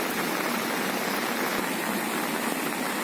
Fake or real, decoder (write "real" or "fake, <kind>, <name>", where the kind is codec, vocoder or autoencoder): real